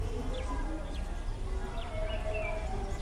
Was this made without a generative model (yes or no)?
yes